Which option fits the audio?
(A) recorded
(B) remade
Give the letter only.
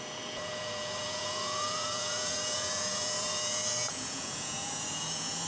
B